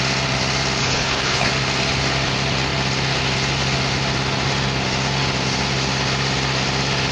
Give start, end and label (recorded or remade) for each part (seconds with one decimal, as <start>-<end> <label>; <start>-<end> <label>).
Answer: 0.0-0.8 recorded; 0.8-1.5 remade; 1.5-7.1 recorded